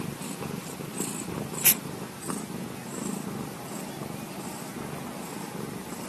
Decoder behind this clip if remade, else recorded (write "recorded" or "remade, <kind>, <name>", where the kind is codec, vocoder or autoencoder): recorded